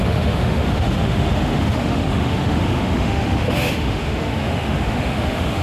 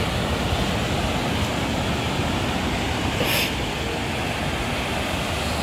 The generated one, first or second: first